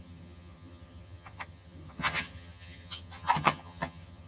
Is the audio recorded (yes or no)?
no